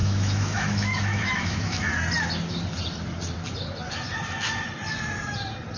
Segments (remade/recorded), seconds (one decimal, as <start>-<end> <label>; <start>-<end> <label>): 0.0-1.9 remade; 1.9-5.8 recorded